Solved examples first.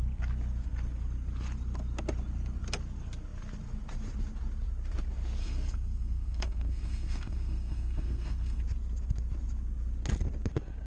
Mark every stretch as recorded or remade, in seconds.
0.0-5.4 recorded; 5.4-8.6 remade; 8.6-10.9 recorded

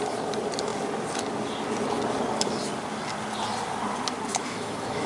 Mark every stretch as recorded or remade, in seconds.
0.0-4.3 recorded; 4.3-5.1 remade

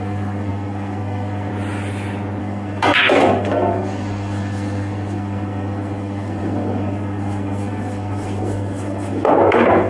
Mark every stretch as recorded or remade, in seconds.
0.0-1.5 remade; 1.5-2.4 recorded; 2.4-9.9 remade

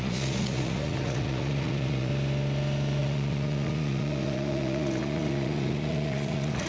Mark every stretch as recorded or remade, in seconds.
0.0-2.1 remade; 2.1-3.0 recorded; 3.0-6.7 remade